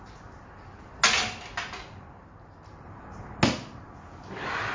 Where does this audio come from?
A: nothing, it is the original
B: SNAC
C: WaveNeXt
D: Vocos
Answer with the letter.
A